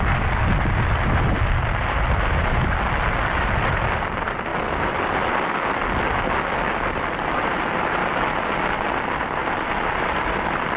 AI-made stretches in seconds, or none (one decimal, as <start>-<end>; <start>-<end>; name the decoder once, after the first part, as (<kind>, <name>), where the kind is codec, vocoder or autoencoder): 9.4-10.8 (vocoder, BigVGAN v2)